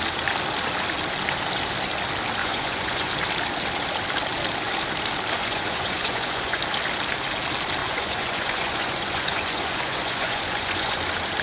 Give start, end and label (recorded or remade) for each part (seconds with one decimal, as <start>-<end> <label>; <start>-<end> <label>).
0.0-2.4 recorded; 2.4-3.1 remade; 3.1-5.4 recorded; 5.4-6.6 remade; 6.6-7.8 recorded; 7.8-11.0 remade; 11.0-11.4 recorded